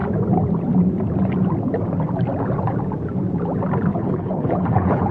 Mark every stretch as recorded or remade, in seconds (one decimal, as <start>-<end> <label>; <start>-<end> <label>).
0.0-3.9 recorded; 3.9-5.1 remade